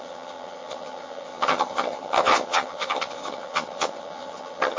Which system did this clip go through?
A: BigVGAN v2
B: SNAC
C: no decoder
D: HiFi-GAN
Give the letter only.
D